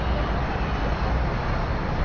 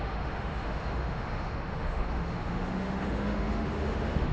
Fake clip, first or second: second